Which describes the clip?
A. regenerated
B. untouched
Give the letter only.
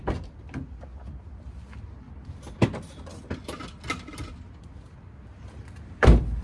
B